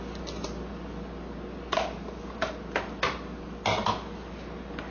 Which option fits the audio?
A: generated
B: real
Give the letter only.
B